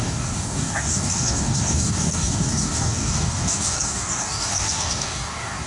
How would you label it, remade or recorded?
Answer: remade